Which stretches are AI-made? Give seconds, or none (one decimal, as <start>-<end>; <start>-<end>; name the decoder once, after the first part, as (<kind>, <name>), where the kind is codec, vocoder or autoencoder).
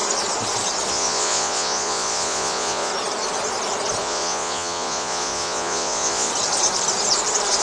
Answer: 0.9-2.9 (vocoder, Vocos); 4.0-6.3